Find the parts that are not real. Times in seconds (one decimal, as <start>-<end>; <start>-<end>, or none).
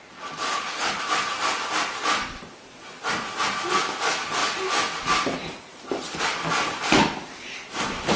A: 0.5-1.0